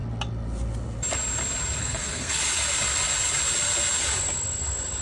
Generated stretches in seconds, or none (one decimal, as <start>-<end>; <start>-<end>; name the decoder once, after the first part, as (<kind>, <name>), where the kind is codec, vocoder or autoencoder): 1.8-2.4 (codec, SNAC)